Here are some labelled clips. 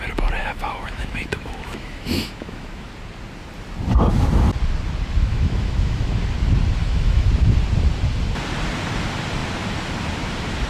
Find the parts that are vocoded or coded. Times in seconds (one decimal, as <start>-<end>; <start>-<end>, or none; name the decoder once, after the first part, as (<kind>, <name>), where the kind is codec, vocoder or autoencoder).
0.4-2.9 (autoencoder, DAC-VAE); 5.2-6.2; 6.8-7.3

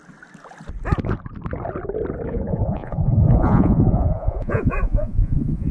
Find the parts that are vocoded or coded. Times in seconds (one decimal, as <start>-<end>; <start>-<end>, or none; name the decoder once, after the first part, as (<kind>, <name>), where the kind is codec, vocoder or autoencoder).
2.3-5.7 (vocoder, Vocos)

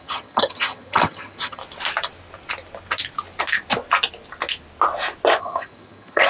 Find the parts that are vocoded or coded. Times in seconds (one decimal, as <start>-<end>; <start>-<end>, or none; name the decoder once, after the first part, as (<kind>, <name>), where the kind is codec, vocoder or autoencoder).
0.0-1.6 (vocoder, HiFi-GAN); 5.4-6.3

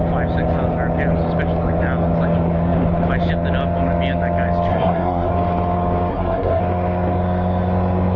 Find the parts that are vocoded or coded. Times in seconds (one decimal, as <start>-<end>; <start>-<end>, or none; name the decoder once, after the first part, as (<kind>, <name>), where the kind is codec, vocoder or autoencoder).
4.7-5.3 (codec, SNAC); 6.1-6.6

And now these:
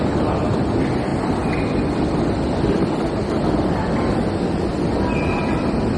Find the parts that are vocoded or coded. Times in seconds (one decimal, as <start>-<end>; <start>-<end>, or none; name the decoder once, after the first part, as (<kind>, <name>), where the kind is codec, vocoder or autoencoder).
none

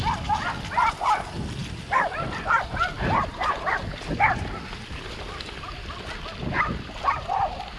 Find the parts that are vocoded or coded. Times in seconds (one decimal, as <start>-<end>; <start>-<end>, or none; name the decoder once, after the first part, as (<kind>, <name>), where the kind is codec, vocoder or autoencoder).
none

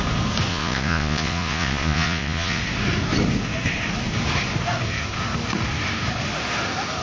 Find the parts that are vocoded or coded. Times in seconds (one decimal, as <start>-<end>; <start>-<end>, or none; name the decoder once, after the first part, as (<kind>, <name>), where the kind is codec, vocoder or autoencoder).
0.5-2.6 (vocoder, Vocos)